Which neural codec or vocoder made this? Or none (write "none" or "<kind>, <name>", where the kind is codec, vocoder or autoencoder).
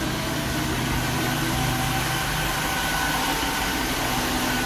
none